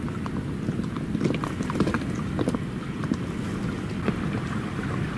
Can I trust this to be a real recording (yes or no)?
yes